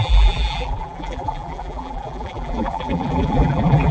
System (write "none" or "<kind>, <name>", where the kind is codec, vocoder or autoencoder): vocoder, BigVGAN v2